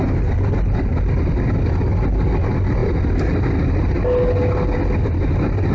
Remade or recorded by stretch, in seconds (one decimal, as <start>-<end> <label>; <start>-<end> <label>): 0.0-5.7 recorded